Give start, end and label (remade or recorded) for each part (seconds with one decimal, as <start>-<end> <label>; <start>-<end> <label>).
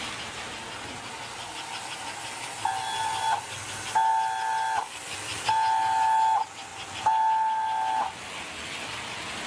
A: 0.0-9.5 recorded